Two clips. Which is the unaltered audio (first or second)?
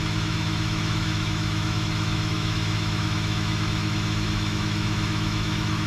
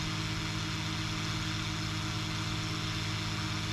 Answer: second